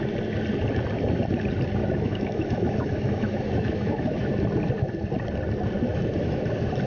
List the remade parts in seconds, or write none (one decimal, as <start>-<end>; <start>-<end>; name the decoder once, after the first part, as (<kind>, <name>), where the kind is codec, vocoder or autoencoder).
1.8-4.3 (autoencoder, DAC-VAE); 5.9-6.4